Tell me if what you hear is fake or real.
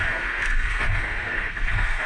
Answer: fake